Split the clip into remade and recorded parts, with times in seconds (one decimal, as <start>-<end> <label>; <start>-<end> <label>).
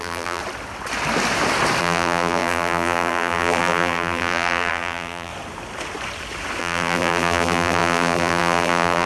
0.0-0.4 remade; 0.4-1.8 recorded; 1.8-5.3 remade; 5.3-6.6 recorded; 6.6-9.1 remade